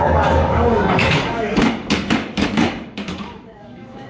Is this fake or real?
fake